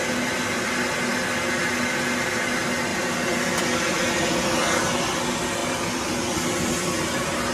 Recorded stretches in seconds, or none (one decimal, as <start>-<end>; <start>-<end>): 0.0-2.9; 3.6-5.6; 6.7-7.5